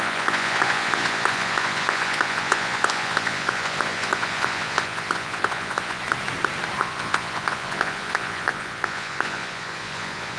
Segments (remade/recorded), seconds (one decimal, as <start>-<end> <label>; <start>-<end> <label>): 0.0-6.0 remade; 6.0-6.8 recorded; 6.8-10.4 remade